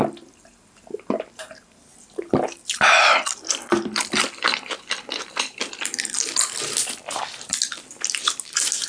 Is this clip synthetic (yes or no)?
no